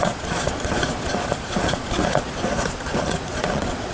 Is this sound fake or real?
fake